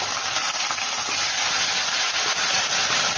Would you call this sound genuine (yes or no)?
yes